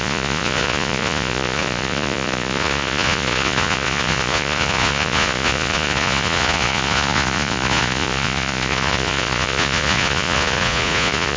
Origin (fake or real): fake